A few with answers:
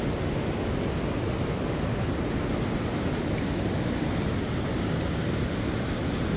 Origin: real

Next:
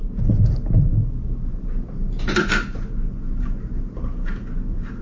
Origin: real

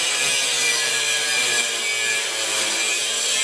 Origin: real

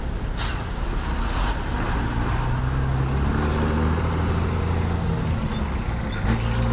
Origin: real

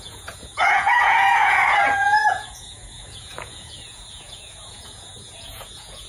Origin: fake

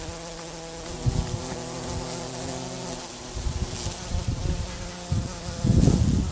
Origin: real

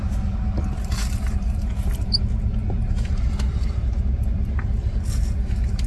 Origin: fake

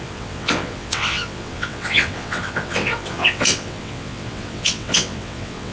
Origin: fake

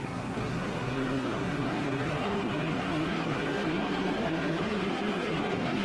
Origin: fake